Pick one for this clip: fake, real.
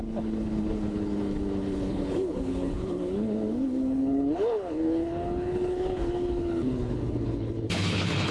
fake